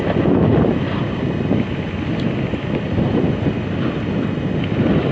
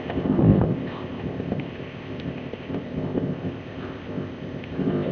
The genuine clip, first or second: first